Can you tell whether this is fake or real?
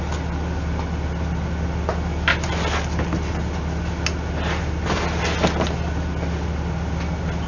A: real